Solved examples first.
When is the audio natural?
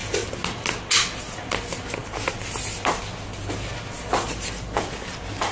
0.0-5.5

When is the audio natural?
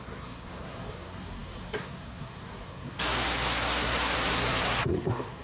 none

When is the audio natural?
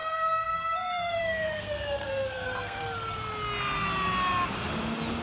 2.8-5.2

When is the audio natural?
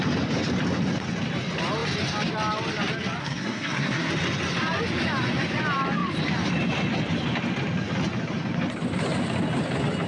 0.0-3.2; 4.1-10.1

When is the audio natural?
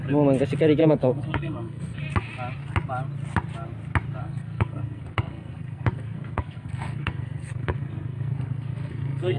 0.0-0.8; 2.0-4.2